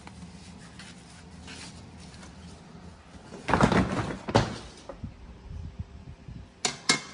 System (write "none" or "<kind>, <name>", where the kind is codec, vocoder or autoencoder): none